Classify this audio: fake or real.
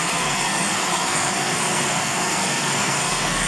fake